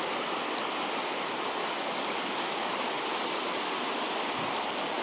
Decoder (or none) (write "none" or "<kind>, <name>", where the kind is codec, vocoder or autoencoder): none